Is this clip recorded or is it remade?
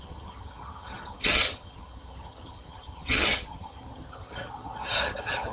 remade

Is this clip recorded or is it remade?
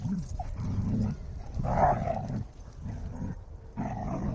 recorded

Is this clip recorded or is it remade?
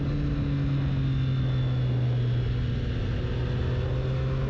recorded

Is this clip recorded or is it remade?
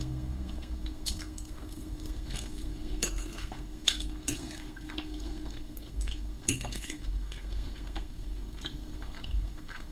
remade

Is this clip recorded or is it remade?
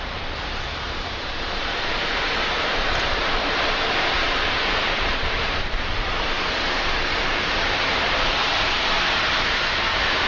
remade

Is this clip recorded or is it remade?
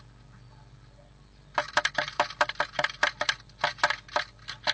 recorded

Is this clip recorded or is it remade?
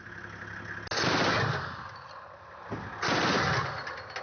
recorded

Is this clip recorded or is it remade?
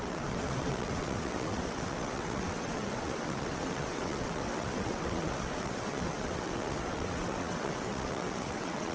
remade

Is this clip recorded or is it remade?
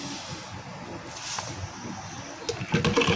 recorded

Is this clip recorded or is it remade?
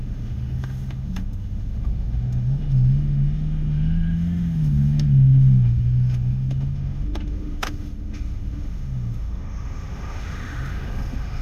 remade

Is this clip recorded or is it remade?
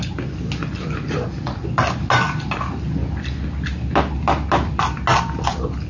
recorded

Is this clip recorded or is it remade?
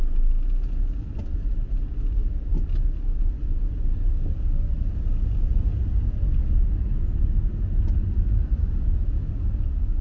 recorded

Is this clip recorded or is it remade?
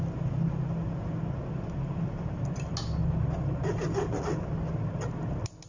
recorded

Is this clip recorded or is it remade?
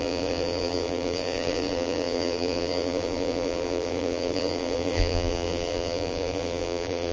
remade